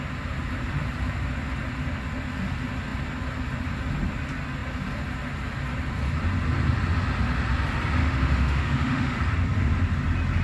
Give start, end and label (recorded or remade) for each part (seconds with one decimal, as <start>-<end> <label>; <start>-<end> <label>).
0.0-8.0 recorded; 8.0-9.2 remade; 9.2-10.4 recorded

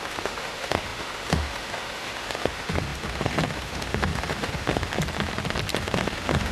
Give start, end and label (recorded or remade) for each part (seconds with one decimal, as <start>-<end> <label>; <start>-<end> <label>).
0.0-4.9 remade; 4.9-5.8 recorded; 5.8-6.5 remade

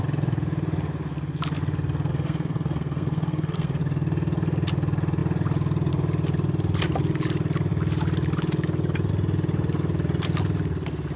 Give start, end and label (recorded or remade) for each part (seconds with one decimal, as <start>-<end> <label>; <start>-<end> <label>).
0.0-2.1 recorded; 2.1-3.8 remade; 3.8-11.2 recorded

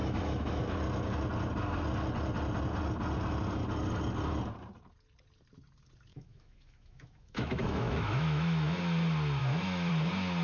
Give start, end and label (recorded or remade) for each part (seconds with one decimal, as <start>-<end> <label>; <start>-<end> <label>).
0.0-0.6 remade; 0.6-6.1 recorded; 6.1-8.8 remade; 8.8-9.4 recorded; 9.4-9.9 remade; 9.9-10.4 recorded

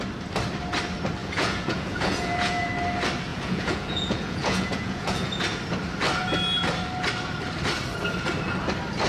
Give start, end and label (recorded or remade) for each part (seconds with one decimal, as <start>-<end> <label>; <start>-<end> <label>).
0.0-1.2 recorded; 1.2-2.7 remade; 2.7-3.3 recorded; 3.3-5.4 remade; 5.4-9.1 recorded